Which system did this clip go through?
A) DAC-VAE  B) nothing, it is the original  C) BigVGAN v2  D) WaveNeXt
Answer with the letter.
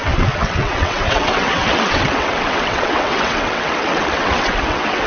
D